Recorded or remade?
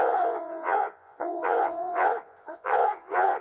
remade